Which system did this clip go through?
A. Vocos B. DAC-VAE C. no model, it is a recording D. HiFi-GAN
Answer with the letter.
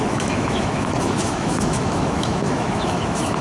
B